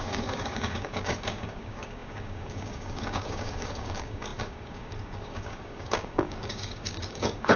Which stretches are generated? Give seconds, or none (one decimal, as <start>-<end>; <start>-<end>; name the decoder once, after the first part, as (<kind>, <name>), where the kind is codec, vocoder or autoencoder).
0.0-7.6 (codec, DAC)